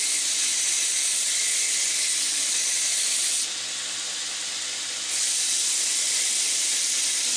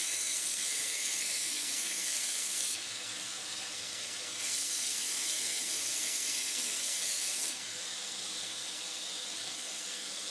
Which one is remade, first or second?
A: second